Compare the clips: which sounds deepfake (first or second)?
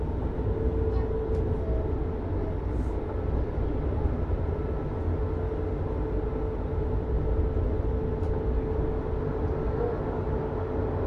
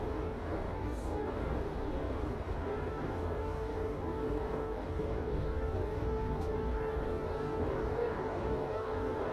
second